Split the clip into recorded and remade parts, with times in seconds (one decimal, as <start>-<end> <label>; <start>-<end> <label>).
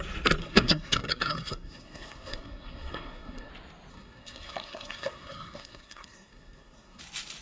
0.0-0.4 recorded; 0.4-3.5 remade; 3.5-3.9 recorded; 3.9-7.0 remade; 7.0-7.4 recorded